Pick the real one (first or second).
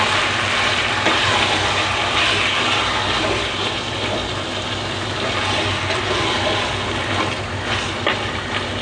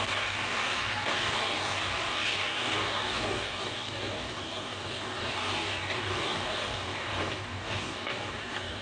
first